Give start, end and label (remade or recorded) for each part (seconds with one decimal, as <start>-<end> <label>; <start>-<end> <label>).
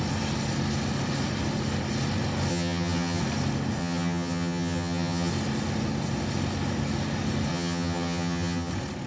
0.0-2.5 recorded; 2.5-3.2 remade; 3.2-3.8 recorded; 3.8-5.3 remade; 5.3-7.5 recorded; 7.5-8.7 remade; 8.7-9.1 recorded